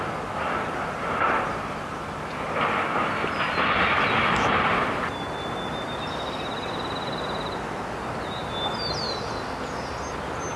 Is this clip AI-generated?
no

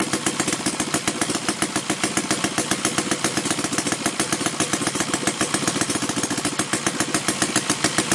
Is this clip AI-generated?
no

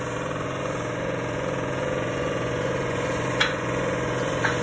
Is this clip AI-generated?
yes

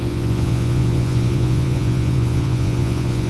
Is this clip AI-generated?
yes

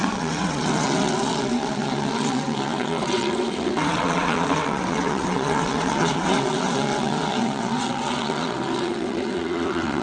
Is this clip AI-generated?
yes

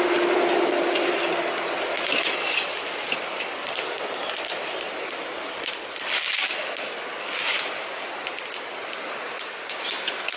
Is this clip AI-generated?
no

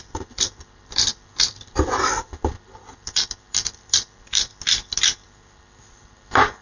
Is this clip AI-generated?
yes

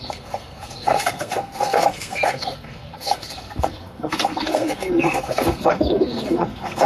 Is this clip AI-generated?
yes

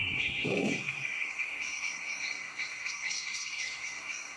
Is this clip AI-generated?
yes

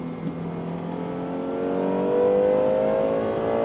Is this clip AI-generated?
no